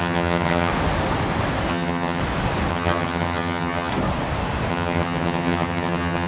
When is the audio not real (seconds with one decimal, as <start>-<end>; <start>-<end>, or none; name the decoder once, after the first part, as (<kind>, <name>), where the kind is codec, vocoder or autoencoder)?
0.0-0.7 (vocoder, HiFi-GAN); 1.7-2.2; 2.7-3.9; 4.7-6.3

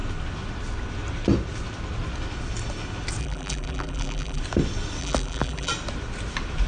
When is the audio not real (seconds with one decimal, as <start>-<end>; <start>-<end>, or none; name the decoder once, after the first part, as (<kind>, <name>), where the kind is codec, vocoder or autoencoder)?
3.2-4.4 (vocoder, BigVGAN v2); 5.0-5.7

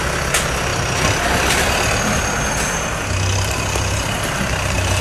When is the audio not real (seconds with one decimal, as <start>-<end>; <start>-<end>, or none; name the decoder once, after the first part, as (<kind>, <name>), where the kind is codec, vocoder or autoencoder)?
none

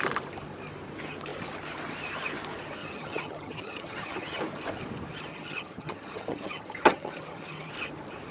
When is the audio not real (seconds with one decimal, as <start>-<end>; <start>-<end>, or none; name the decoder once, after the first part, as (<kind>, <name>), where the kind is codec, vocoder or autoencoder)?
2.8-4.4 (vocoder, HiFi-GAN); 5.3-7.7

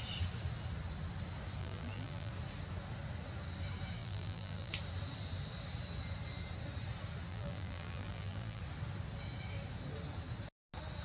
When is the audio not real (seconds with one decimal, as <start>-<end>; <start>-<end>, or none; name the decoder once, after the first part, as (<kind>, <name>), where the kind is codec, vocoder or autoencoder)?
1.6-2.3 (vocoder, BigVGAN v2); 4.0-4.7; 7.3-8.6

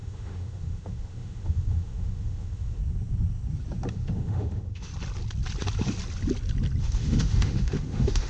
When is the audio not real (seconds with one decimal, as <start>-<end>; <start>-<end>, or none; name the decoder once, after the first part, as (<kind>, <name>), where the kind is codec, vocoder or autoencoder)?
0.0-2.8 (autoencoder, DAC-VAE); 3.9-4.9; 6.8-8.3

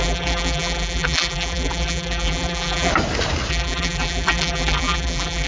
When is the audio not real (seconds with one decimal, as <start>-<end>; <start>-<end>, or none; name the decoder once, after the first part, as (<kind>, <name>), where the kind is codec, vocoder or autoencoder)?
0.0-2.9 (vocoder, BigVGAN v2); 3.5-5.5

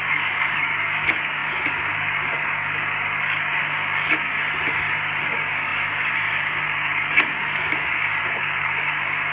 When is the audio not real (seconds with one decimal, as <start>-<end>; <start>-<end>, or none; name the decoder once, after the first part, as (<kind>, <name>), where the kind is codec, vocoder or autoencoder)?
0.0-4.3 (codec, DAC); 5.2-9.3